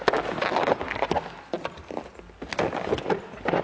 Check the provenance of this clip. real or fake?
real